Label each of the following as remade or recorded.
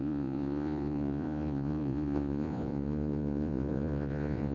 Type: remade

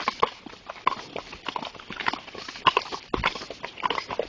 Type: recorded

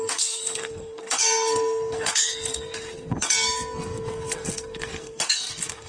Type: remade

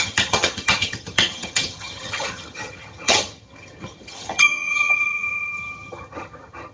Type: remade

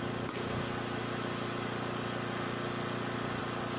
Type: recorded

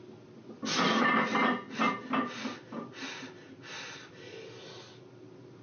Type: recorded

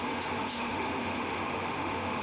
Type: remade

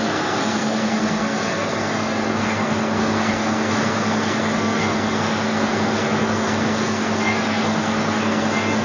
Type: remade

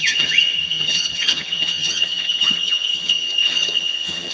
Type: remade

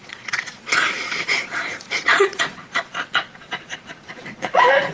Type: remade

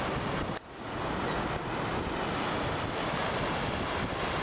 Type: recorded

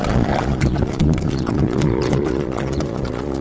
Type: remade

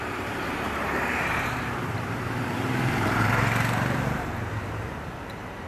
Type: remade